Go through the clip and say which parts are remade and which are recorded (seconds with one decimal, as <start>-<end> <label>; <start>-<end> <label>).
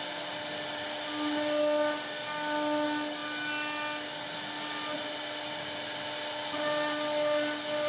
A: 0.0-7.9 recorded